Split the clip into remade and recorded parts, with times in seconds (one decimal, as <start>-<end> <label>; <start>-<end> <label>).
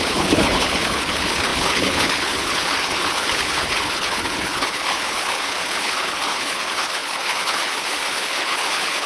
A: 0.0-9.1 remade